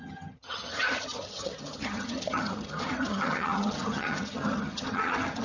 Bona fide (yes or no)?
no